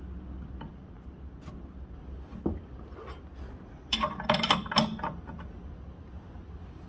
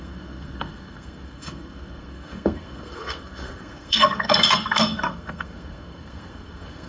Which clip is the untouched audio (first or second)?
first